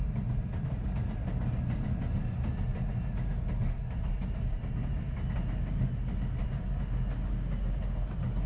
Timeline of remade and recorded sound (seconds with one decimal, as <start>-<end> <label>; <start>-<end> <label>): 0.0-8.5 recorded